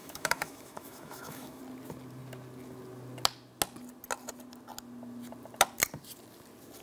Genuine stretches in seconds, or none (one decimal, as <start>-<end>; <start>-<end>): 1.6-6.8